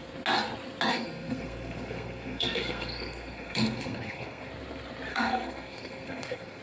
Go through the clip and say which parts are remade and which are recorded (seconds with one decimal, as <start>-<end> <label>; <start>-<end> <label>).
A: 0.0-0.9 recorded; 0.9-4.5 remade; 4.5-5.1 recorded; 5.1-6.6 remade